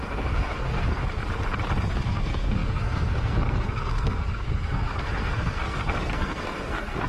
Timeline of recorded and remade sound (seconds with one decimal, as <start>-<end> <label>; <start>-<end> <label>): 0.0-1.0 remade; 1.0-1.9 recorded; 1.9-7.1 remade